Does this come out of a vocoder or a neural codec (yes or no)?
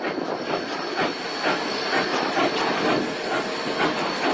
no